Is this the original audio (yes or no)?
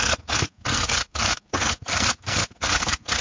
no